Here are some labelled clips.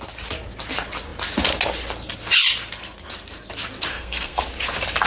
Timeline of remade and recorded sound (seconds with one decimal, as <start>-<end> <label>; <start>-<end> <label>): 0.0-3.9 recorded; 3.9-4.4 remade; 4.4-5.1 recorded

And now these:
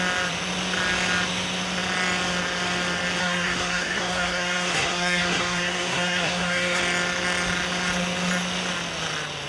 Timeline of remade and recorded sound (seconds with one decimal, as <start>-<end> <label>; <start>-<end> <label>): 0.0-3.2 recorded; 3.2-6.8 remade; 6.8-9.5 recorded

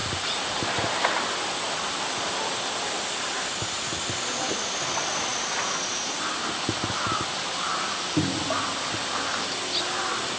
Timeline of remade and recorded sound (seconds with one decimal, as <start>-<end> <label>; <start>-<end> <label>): 0.0-10.4 recorded

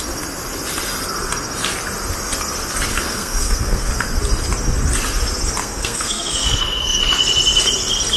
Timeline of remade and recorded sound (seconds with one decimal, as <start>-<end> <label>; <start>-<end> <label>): 0.0-2.9 recorded; 2.9-3.9 remade; 3.9-5.6 recorded; 5.6-7.0 remade; 7.0-8.2 recorded